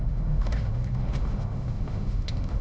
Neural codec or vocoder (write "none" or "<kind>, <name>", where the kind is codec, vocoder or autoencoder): autoencoder, DAC-VAE